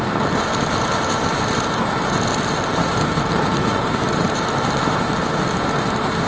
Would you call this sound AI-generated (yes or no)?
yes